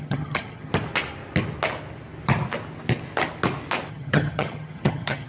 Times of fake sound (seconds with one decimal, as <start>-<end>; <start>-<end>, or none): 0.0-0.7; 3.9-5.3